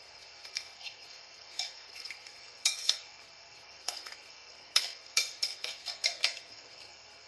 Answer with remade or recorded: remade